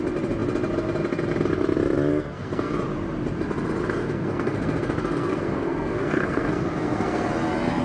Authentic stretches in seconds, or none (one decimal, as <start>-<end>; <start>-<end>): 0.0-2.1; 2.7-4.0; 7.3-7.8